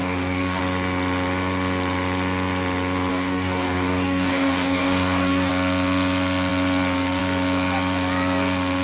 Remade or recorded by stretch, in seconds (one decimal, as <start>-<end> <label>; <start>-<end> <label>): 0.0-0.6 remade; 0.6-3.1 recorded; 3.1-5.5 remade; 5.5-8.8 recorded